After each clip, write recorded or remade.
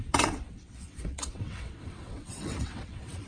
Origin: remade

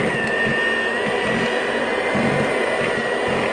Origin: recorded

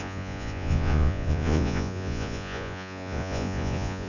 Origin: remade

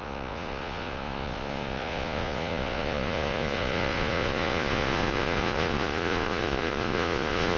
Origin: remade